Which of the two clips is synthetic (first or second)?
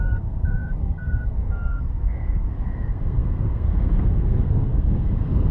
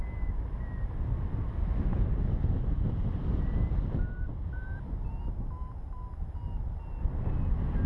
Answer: first